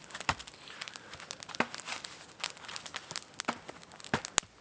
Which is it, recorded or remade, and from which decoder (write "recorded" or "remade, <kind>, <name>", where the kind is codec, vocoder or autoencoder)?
recorded